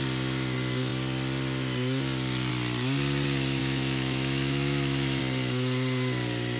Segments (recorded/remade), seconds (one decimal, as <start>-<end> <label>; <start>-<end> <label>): 0.0-3.6 recorded; 3.6-5.2 remade; 5.2-6.6 recorded